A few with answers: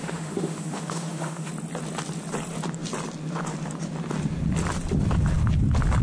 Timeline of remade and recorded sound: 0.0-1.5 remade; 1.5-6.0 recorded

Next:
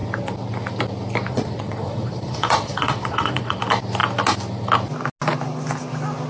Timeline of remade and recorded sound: 0.0-1.3 recorded; 1.3-3.6 remade; 3.6-6.3 recorded